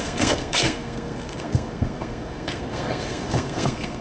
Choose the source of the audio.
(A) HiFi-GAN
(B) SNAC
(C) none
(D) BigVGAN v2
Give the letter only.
B